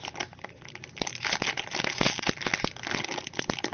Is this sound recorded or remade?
recorded